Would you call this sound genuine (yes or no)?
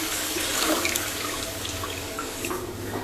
no